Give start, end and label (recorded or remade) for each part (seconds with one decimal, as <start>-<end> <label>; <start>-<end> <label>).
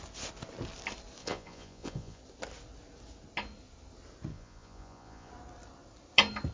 0.0-1.2 recorded; 1.2-2.2 remade; 2.2-4.3 recorded; 4.3-5.3 remade; 5.3-6.5 recorded